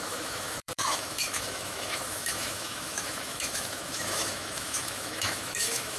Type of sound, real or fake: fake